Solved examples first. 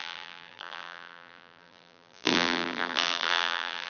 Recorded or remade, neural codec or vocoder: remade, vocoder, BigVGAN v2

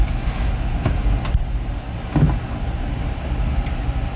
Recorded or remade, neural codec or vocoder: recorded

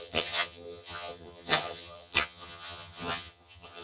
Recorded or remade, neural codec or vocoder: remade, vocoder, HiFi-GAN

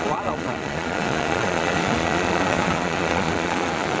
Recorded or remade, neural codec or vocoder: remade, vocoder, Vocos